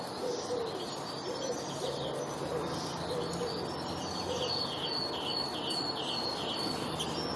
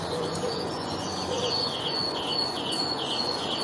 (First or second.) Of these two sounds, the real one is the first